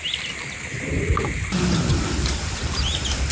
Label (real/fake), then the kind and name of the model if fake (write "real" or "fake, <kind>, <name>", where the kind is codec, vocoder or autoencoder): fake, vocoder, BigVGAN v2